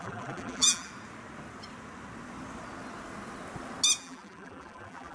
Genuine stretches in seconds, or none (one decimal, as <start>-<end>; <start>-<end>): 0.9-4.0